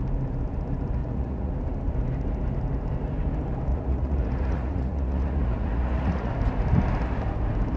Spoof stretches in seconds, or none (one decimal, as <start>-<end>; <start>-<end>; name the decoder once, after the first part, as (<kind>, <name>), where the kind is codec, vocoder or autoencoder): 1.0-1.5 (vocoder, Vocos); 3.7-6.3